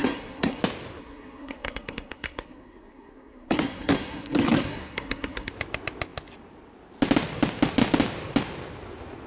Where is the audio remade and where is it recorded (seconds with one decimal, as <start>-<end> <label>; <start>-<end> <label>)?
0.0-0.6 remade; 0.6-1.0 recorded; 1.0-5.5 remade; 5.5-9.3 recorded